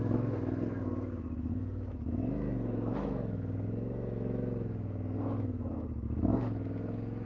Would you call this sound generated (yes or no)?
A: yes